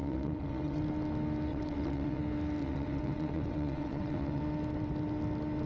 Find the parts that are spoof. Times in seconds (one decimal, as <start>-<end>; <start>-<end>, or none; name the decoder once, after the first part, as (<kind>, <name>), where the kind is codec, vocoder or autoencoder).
0.0-0.8 (vocoder, WaveNeXt); 1.5-2.2; 2.6-4.4